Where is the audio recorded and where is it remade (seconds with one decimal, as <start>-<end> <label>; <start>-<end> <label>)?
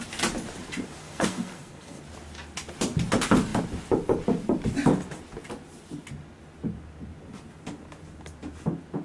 0.0-1.0 recorded; 1.0-2.0 remade; 2.0-9.0 recorded